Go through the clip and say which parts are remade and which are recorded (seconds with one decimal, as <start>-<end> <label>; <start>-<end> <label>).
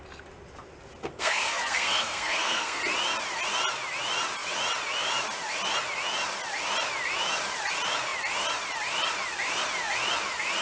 0.0-1.0 recorded; 1.0-2.8 remade; 2.8-10.6 recorded